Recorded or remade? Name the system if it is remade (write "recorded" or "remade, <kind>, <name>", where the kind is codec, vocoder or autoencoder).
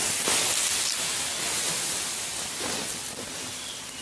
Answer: recorded